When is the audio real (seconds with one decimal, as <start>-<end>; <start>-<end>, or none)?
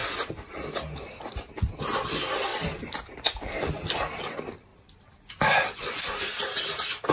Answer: 0.0-4.7; 6.0-7.1